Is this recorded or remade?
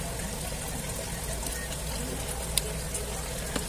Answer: recorded